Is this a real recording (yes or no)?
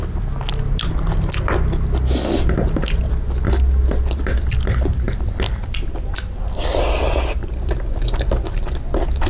yes